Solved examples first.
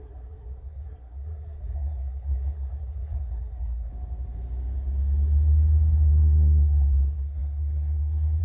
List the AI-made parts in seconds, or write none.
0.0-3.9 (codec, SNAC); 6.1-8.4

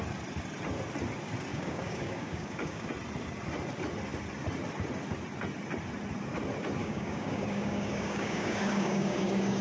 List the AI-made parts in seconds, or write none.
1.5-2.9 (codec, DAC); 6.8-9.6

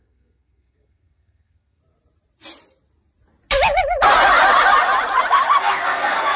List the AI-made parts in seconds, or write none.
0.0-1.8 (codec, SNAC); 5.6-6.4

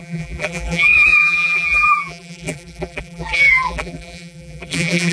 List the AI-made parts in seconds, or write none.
0.0-5.1 (vocoder, BigVGAN v2)

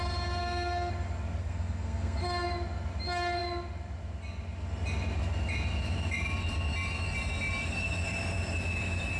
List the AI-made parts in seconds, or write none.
0.4-0.9 (codec, SNAC); 1.4-2.2